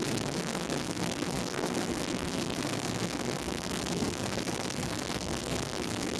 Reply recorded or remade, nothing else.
remade